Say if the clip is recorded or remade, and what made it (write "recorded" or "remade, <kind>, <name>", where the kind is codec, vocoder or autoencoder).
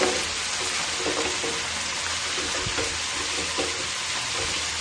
recorded